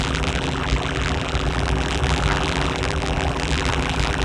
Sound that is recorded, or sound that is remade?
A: remade